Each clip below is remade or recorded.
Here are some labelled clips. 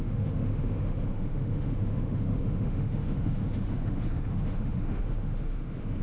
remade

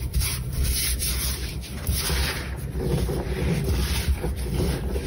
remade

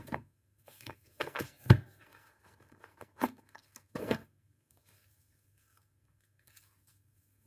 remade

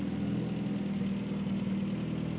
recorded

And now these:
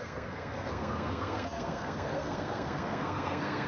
remade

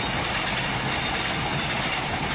recorded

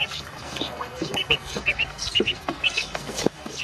remade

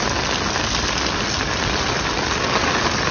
recorded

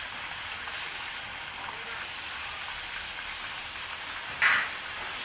recorded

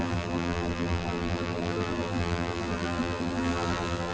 remade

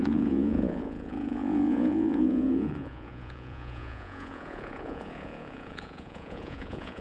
remade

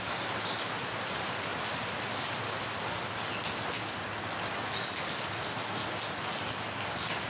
recorded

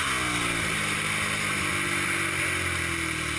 recorded